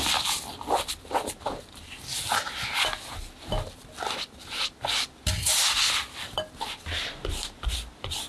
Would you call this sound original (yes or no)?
yes